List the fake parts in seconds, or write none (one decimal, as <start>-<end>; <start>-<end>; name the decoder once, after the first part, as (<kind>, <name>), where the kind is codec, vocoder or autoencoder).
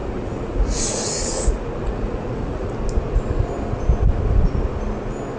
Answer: 0.0-2.7 (vocoder, Vocos)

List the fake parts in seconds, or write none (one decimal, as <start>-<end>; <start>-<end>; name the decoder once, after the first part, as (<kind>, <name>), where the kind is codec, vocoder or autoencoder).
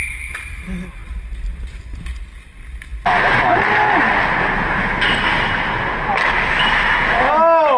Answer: none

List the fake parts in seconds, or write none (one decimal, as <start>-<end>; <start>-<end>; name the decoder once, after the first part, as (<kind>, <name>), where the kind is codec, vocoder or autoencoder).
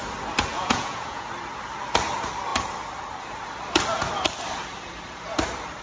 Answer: 0.5-1.3 (vocoder, Vocos)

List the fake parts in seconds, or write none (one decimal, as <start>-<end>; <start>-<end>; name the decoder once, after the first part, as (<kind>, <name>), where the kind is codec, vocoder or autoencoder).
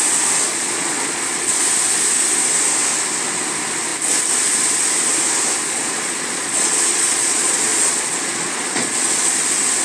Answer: 0.5-1.6 (vocoder, Vocos); 5.6-9.4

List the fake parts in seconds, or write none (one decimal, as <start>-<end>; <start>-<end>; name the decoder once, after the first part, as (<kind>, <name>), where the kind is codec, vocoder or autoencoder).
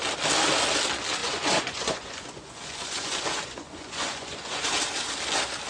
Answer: 1.2-4.6 (vocoder, Vocos)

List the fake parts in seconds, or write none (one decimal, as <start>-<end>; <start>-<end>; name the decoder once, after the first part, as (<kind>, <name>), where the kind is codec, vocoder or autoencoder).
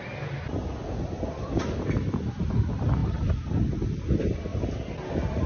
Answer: none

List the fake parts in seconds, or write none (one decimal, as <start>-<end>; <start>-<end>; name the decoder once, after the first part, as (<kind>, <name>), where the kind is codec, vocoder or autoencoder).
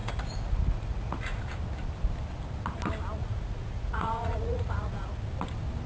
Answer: 0.0-1.4 (vocoder, Vocos); 3.2-5.2